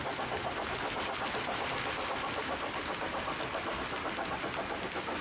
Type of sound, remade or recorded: recorded